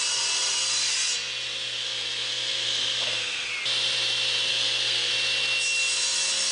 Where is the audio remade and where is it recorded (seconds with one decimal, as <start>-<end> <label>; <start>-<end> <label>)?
0.0-1.8 recorded; 1.8-3.5 remade; 3.5-4.5 recorded; 4.5-5.1 remade; 5.1-6.5 recorded